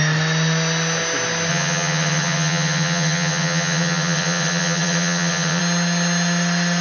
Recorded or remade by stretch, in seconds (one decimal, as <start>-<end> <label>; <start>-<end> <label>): 0.0-1.5 recorded; 1.5-5.6 remade; 5.6-6.8 recorded